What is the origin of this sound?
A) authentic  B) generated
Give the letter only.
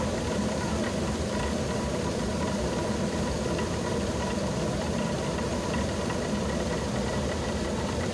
A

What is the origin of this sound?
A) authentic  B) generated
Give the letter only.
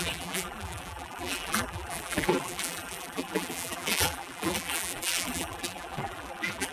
B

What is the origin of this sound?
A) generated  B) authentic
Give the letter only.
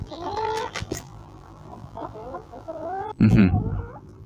A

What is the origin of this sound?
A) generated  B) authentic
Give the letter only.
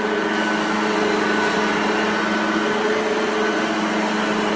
B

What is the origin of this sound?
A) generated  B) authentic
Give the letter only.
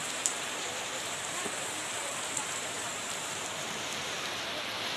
A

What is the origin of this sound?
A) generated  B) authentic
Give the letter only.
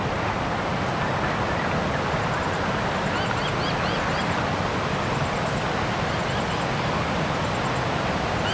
B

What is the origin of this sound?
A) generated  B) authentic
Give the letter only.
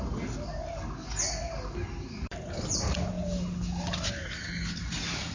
B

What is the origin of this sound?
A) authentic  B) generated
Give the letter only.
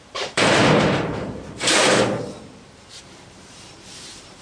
B